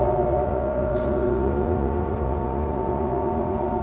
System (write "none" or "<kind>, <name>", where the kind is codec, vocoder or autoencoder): vocoder, Vocos